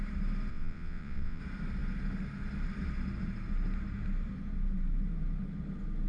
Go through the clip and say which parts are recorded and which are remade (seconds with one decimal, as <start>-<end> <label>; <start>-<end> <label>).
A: 0.0-0.5 recorded; 0.5-1.4 remade; 1.4-6.1 recorded